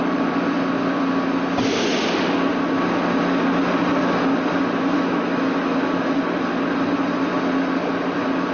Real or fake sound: real